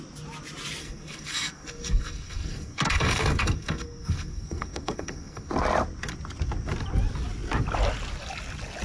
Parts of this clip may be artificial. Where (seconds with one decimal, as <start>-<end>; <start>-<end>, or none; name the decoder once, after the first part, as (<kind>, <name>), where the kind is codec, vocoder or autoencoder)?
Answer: 0.8-5.5 (codec, SNAC)